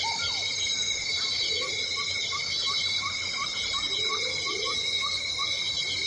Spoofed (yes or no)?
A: no